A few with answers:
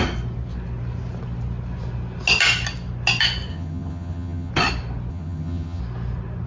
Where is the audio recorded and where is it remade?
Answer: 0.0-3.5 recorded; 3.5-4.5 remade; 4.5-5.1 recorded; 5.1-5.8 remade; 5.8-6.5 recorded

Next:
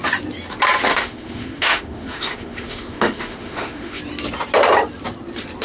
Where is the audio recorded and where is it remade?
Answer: 0.0-0.9 recorded; 0.9-4.0 remade; 4.0-5.6 recorded

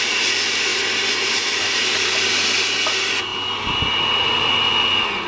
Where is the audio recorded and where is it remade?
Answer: 0.0-0.7 recorded; 0.7-2.6 remade; 2.6-5.3 recorded

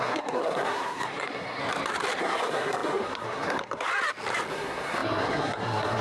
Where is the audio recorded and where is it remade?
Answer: 0.0-1.6 remade; 1.6-2.2 recorded; 2.2-3.9 remade; 3.9-4.5 recorded; 4.5-6.0 remade

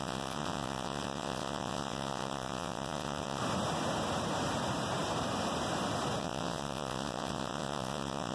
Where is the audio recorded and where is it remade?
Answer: 0.0-3.4 remade; 3.4-6.2 recorded; 6.2-8.3 remade

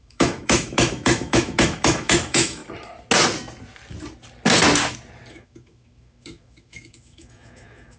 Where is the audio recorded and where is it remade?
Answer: 0.0-2.6 remade; 2.6-5.3 recorded; 5.3-8.0 remade